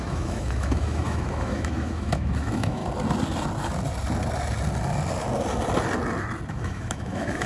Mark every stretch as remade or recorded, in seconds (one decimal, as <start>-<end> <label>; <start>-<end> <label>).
0.0-2.8 remade; 2.8-6.5 recorded; 6.5-7.5 remade